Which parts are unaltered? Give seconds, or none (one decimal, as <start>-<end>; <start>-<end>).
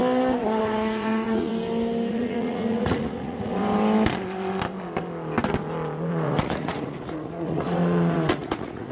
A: 0.0-0.6; 1.5-2.1; 3.6-6.1